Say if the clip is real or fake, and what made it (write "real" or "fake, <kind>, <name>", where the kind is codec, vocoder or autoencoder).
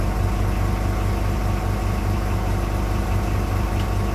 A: real